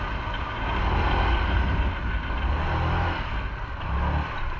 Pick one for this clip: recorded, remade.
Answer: recorded